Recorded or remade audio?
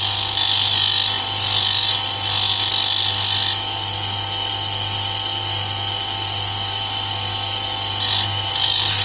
remade